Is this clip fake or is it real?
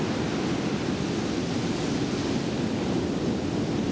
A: real